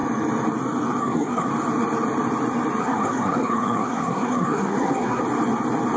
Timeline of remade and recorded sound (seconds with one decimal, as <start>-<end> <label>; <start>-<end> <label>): 0.0-1.0 recorded; 1.0-1.5 remade; 1.5-2.8 recorded; 2.8-5.2 remade; 5.2-6.0 recorded